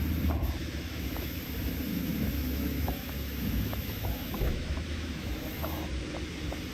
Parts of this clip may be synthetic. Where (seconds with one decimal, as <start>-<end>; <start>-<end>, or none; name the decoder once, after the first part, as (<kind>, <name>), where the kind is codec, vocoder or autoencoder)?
0.6-1.4 (autoencoder, DAC-VAE); 1.9-5.9